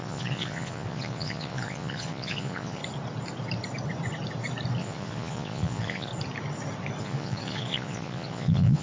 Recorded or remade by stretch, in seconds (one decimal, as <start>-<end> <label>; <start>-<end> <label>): 0.0-2.8 remade; 2.8-4.8 recorded; 4.8-6.1 remade; 6.1-7.0 recorded; 7.0-8.8 remade